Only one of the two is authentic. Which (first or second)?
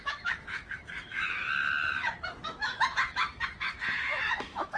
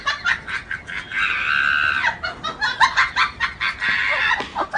second